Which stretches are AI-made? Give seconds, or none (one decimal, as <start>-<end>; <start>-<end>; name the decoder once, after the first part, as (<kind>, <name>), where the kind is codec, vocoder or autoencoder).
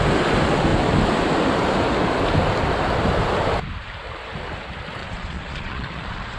5.0-6.4 (vocoder, Vocos)